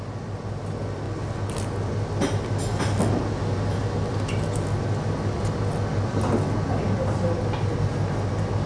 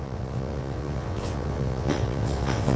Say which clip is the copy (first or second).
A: second